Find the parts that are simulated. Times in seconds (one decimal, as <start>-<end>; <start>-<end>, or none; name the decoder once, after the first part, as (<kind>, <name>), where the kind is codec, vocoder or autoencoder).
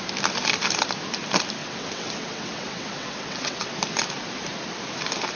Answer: 1.6-3.7 (vocoder, WaveNeXt)